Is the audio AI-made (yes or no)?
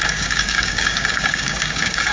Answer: yes